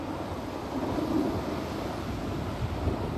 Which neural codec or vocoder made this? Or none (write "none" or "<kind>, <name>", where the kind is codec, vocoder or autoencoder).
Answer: none